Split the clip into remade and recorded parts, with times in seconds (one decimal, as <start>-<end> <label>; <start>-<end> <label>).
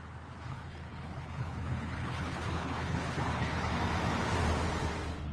0.0-0.5 recorded; 0.5-3.7 remade; 3.7-5.3 recorded